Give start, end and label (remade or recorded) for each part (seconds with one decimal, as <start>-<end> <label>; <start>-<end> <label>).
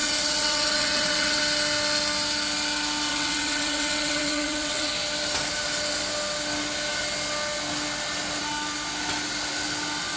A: 0.0-1.4 remade; 1.4-3.1 recorded; 3.1-4.9 remade; 4.9-10.2 recorded